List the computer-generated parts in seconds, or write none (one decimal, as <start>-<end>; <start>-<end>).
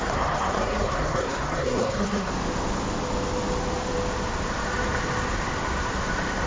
0.0-2.3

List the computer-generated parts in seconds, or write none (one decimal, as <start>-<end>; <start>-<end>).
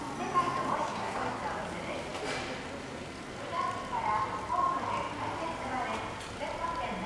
0.9-1.4